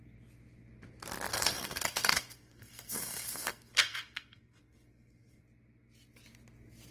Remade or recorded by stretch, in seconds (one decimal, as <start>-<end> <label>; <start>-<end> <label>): 0.0-1.3 recorded; 1.3-5.4 remade; 5.4-6.9 recorded